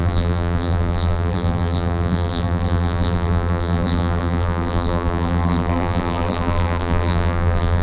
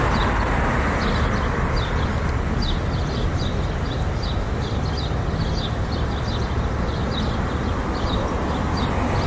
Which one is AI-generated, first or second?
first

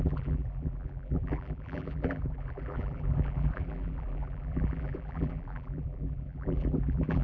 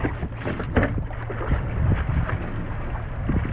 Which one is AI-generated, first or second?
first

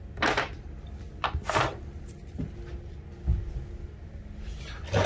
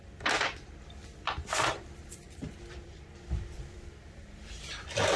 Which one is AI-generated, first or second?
second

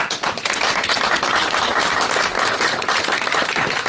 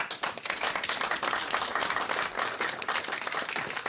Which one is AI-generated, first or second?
first